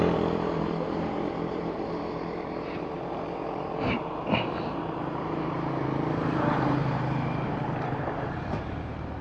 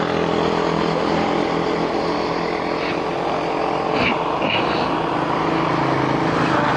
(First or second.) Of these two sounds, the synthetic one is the first